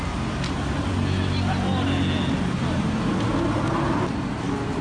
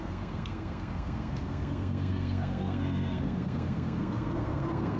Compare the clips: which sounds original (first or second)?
first